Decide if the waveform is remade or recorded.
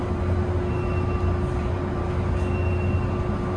recorded